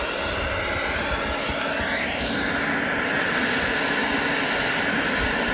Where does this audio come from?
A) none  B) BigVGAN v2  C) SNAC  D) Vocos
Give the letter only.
A